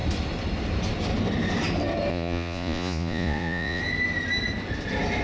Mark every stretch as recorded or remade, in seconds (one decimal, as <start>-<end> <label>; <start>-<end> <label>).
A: 0.0-2.1 recorded; 2.1-3.8 remade; 3.8-5.2 recorded